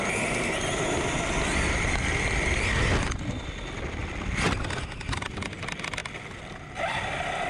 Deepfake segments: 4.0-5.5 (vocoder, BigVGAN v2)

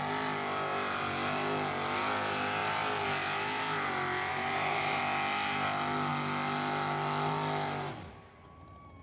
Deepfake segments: 4.3-5.0 (vocoder, BigVGAN v2)